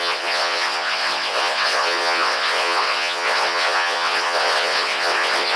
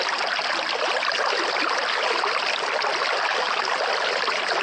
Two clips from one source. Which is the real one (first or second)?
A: second